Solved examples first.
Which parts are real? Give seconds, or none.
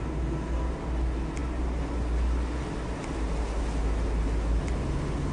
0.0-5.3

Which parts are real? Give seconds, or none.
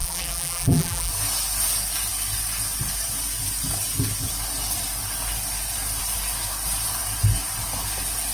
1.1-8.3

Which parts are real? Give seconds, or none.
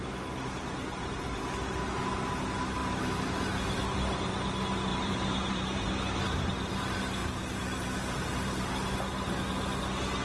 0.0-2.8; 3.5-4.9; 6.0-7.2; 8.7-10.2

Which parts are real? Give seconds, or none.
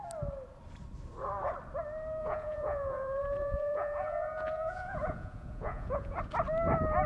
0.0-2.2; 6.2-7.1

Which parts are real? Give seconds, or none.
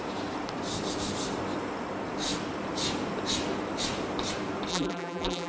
0.0-4.7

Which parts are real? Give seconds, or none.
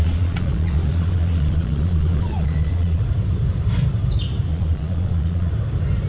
3.0-4.5; 5.5-6.1